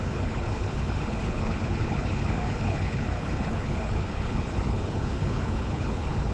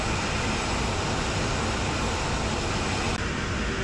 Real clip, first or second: second